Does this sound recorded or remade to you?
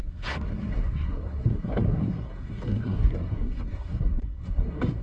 remade